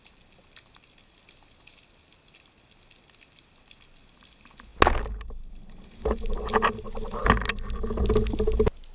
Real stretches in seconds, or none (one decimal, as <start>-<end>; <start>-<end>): 0.0-8.9